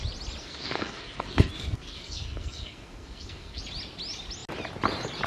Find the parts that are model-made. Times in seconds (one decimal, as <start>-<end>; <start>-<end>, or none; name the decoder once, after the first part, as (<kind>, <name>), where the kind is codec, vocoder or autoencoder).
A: 0.4-3.6 (codec, SNAC)